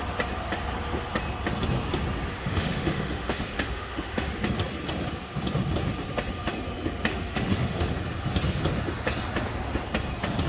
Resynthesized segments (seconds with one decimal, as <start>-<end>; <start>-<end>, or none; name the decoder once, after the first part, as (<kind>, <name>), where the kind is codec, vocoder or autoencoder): 2.4-4.3 (autoencoder, DAC-VAE); 7.1-7.9